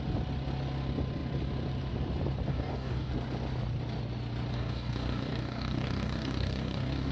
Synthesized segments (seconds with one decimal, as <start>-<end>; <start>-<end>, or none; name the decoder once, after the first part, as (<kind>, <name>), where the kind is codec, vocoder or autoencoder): 2.5-3.1 (codec, DAC); 4.5-7.1